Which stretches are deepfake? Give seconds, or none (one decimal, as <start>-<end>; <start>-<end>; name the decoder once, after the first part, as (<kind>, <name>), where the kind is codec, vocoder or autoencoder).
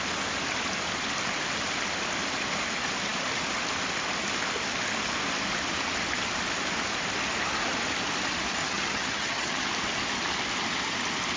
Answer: 8.6-9.7 (vocoder, HiFi-GAN)